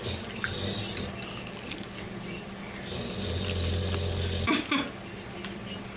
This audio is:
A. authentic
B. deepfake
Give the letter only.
A